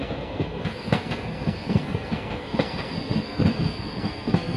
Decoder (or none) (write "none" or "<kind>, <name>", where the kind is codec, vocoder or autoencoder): codec, SNAC